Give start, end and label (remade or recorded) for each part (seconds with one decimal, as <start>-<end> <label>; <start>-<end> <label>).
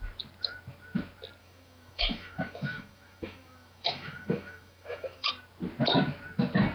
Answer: 0.0-1.4 recorded; 1.4-5.3 remade; 5.3-6.7 recorded